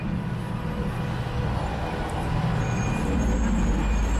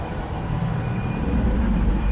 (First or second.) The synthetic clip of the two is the second